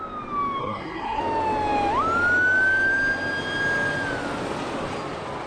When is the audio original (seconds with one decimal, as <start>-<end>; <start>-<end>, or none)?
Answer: 0.0-0.6; 1.2-5.5